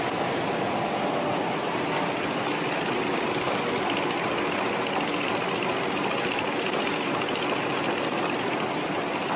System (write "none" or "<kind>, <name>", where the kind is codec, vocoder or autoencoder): none